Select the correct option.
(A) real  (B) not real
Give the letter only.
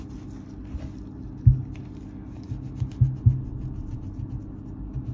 A